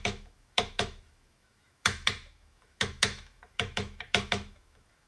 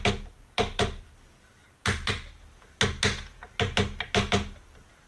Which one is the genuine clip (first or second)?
second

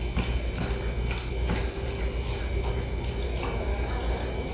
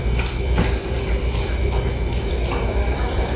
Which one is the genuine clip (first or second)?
first